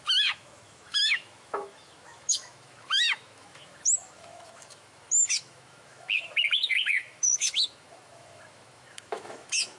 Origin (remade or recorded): remade